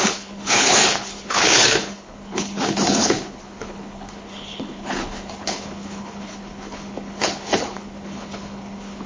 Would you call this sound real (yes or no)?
no